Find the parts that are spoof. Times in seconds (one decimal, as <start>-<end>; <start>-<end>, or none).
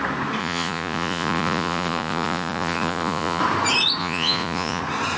0.4-3.4; 4.0-4.8